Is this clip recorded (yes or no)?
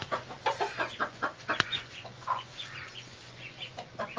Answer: no